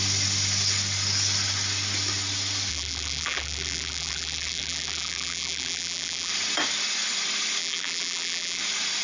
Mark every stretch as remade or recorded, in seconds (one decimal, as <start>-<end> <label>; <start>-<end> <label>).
0.0-2.7 recorded; 2.7-6.3 remade; 6.3-7.6 recorded; 7.6-8.6 remade; 8.6-9.0 recorded